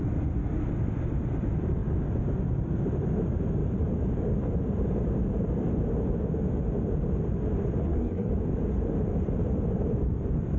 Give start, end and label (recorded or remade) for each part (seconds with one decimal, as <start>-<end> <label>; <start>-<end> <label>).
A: 0.0-7.8 recorded; 7.8-8.3 remade; 8.3-10.6 recorded